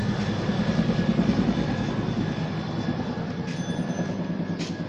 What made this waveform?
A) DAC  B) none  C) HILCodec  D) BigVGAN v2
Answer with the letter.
B